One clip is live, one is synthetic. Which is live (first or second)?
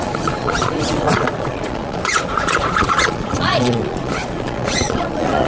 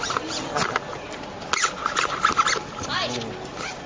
second